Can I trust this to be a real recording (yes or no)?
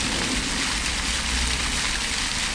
yes